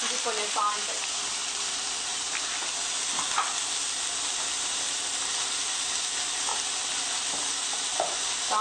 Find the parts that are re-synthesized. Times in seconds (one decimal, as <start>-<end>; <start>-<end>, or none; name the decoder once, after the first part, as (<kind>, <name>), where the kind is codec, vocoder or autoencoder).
none